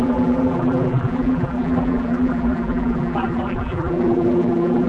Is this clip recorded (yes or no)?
no